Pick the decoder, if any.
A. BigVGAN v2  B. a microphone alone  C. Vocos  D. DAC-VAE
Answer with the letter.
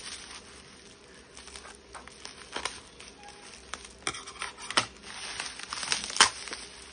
B